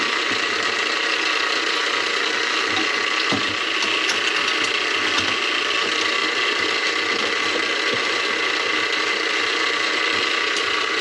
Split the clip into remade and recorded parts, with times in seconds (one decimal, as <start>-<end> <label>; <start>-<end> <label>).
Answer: 0.0-11.0 recorded